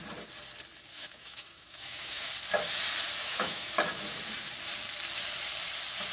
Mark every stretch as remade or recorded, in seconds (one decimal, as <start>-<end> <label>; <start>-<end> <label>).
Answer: 0.0-0.9 recorded; 0.9-2.3 remade; 2.3-3.2 recorded; 3.2-3.7 remade; 3.7-6.1 recorded